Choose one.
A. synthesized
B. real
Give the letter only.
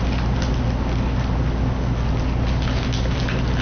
B